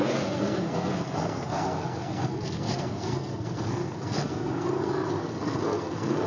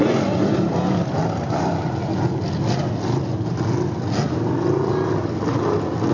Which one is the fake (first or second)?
first